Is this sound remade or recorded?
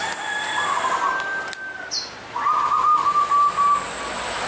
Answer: recorded